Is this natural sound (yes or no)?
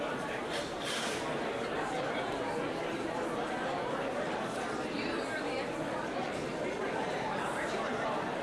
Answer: no